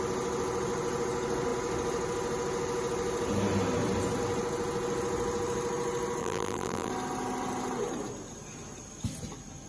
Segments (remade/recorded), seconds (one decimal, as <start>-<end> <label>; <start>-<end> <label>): 0.0-6.2 recorded; 6.2-6.9 remade; 6.9-9.7 recorded

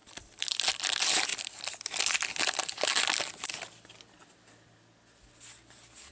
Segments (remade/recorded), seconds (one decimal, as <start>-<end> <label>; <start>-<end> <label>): 0.0-0.8 remade; 0.8-1.3 recorded; 1.3-1.9 remade; 1.9-6.1 recorded

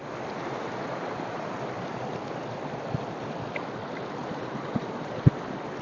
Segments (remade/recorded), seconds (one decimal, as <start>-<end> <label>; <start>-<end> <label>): 0.0-0.9 recorded; 0.9-1.9 remade; 1.9-4.2 recorded; 4.2-5.2 remade; 5.2-5.8 recorded

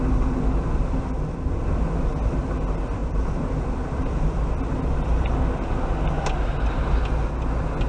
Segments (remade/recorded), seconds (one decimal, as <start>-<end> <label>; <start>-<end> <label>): 0.0-3.0 recorded; 3.0-4.8 remade; 4.8-7.9 recorded